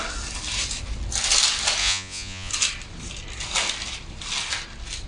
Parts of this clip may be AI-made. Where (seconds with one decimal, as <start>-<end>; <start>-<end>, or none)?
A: 1.8-2.5